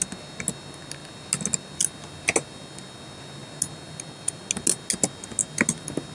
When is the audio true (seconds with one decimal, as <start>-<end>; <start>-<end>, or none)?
0.0-6.1